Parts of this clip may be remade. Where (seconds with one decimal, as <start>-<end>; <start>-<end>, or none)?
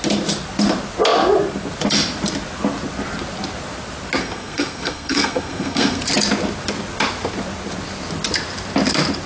4.2-6.0